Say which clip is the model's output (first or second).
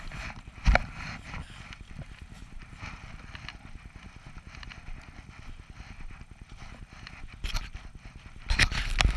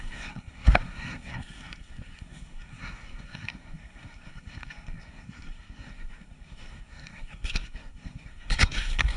second